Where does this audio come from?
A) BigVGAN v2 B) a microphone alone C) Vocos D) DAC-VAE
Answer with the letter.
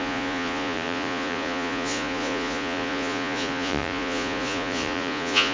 C